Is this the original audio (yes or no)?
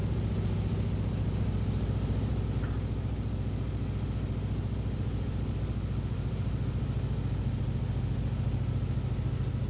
yes